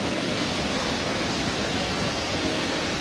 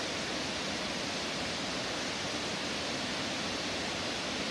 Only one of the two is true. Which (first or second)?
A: second